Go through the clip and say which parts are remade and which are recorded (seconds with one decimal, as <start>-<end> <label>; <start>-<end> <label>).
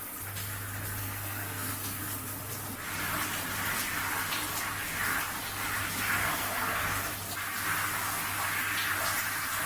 0.0-1.0 recorded; 1.0-2.0 remade; 2.0-6.2 recorded; 6.2-7.1 remade; 7.1-9.7 recorded